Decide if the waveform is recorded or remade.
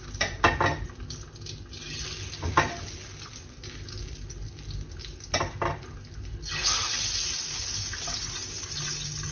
recorded